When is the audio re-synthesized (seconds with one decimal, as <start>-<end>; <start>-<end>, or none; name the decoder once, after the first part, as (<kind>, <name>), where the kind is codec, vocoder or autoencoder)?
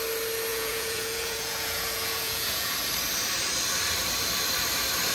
0.5-2.7 (vocoder, Vocos)